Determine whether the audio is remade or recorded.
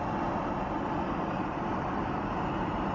recorded